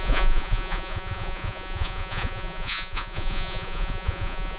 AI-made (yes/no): yes